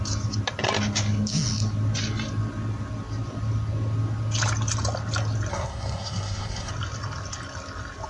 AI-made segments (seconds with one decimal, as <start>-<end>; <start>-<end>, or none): 5.5-6.7